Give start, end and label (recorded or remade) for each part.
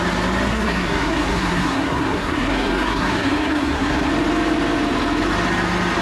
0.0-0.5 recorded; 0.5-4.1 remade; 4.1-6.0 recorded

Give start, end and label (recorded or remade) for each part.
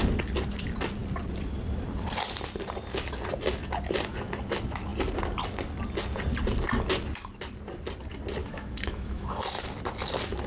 0.0-8.4 recorded; 8.4-9.3 remade; 9.3-10.5 recorded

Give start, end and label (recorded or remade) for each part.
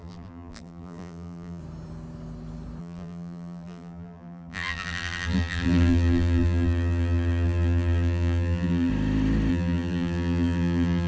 0.0-1.6 remade; 1.6-2.8 recorded; 2.8-8.9 remade; 8.9-9.5 recorded; 9.5-11.1 remade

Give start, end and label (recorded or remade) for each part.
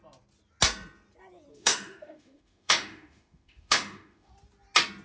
0.0-1.5 recorded; 1.5-4.3 remade; 4.3-5.0 recorded